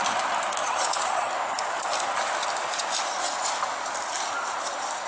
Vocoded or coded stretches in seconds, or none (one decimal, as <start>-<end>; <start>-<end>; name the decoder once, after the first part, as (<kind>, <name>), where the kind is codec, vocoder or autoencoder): 0.6-1.3 (vocoder, HiFi-GAN)

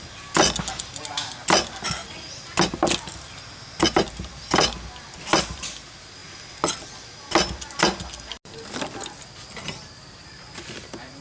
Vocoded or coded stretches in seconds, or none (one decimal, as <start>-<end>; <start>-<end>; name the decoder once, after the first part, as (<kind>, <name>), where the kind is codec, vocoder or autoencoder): none